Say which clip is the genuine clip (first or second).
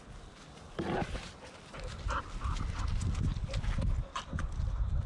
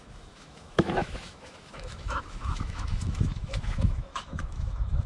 first